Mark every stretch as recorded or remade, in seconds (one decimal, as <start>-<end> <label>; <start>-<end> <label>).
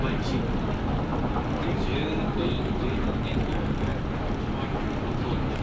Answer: 0.0-5.6 recorded